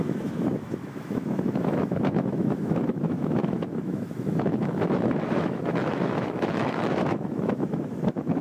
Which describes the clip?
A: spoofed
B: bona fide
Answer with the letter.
A